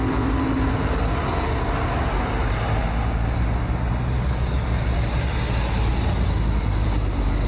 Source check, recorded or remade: recorded